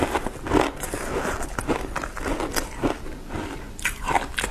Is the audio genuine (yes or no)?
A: yes